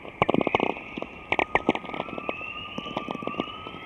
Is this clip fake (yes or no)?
yes